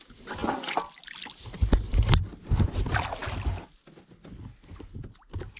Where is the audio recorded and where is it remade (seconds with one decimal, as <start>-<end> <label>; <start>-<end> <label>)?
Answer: 0.0-5.6 recorded